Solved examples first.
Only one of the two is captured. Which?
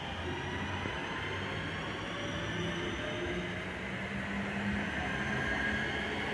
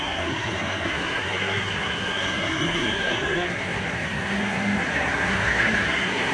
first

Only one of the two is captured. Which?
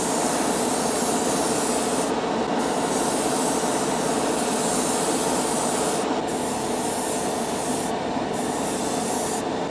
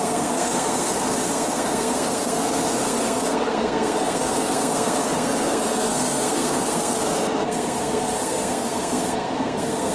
first